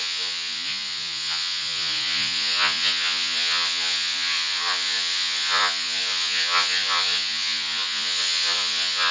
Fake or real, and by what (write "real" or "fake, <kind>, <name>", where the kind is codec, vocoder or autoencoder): fake, vocoder, Vocos